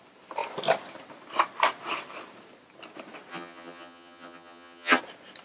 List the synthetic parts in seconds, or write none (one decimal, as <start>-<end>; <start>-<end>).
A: 3.3-5.0